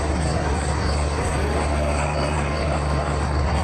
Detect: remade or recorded remade